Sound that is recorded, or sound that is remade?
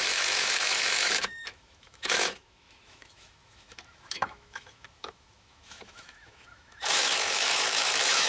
remade